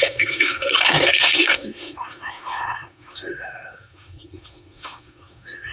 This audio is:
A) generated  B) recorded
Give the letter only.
A